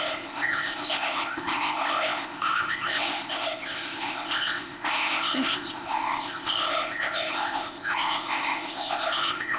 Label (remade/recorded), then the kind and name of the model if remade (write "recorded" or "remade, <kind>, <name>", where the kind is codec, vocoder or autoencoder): remade, codec, ZipCodec